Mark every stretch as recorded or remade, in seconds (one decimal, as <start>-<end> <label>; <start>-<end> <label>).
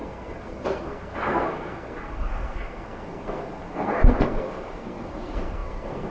0.0-6.1 remade